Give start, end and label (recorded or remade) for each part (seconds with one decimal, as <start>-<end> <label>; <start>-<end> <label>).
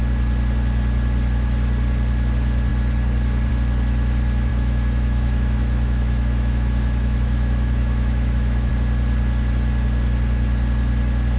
0.0-4.5 recorded; 4.5-8.7 remade; 8.7-11.4 recorded